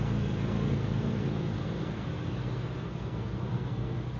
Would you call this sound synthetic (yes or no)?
yes